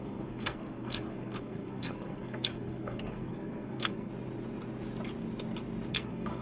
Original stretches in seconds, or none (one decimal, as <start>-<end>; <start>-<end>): 4.1-5.9